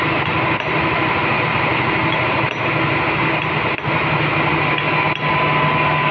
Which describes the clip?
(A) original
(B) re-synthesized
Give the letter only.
A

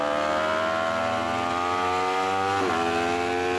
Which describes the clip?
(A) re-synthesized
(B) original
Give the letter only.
B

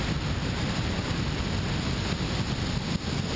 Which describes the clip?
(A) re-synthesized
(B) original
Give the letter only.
B